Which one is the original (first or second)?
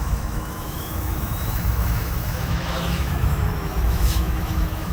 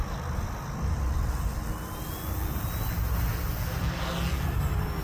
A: second